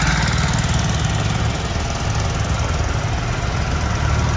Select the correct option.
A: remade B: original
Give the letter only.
B